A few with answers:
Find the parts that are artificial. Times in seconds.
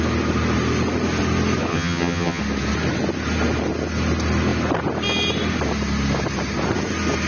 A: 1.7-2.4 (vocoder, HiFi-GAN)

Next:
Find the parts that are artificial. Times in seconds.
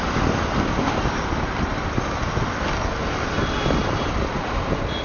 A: none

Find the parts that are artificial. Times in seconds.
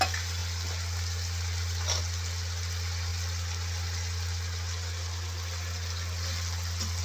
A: none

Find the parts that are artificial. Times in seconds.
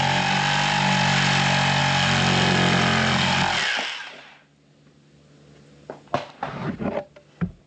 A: none